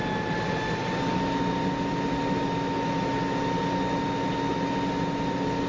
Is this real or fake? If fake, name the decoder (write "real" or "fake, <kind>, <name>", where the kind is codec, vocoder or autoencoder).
real